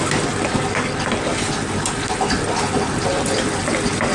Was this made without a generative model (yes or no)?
yes